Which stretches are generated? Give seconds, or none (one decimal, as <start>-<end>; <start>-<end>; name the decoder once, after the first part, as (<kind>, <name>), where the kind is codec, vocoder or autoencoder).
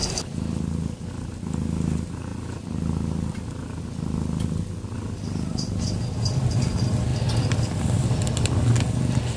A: none